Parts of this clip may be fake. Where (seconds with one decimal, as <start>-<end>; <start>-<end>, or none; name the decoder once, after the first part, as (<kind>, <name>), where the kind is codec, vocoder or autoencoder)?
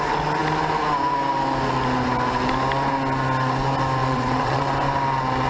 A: 4.0-4.6 (vocoder, WaveNeXt)